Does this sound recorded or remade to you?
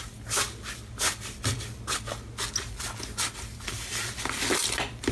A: recorded